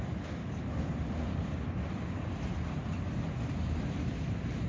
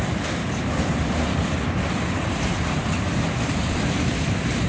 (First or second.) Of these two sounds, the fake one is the second